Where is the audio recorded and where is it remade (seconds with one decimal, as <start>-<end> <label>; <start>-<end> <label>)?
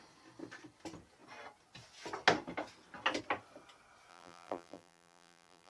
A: 0.0-4.1 recorded; 4.1-5.7 remade